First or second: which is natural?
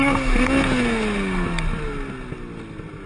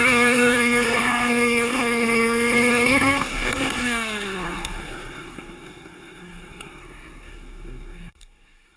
first